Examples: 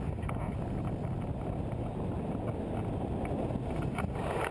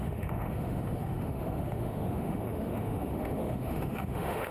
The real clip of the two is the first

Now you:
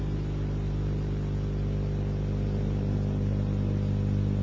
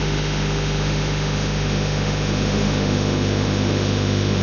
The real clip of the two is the first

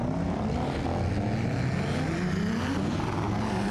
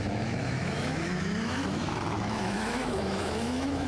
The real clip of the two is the first